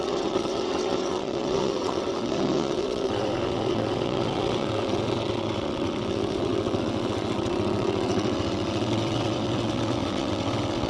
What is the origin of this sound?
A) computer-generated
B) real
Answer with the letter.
A